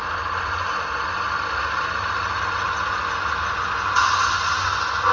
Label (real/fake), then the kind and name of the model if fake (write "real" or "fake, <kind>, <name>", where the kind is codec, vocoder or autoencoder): real